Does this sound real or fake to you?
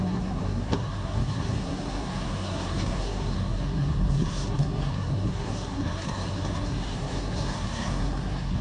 fake